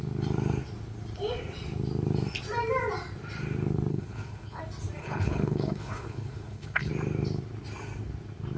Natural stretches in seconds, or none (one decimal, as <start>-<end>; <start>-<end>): 0.0-3.9; 4.6-5.0; 6.9-8.6